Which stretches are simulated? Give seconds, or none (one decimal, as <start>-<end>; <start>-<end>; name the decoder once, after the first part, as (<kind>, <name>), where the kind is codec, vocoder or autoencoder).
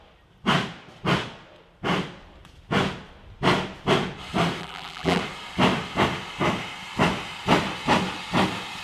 4.6-5.2 (vocoder, BigVGAN v2)